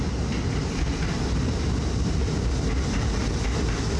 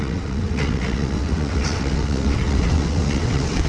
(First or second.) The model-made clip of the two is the second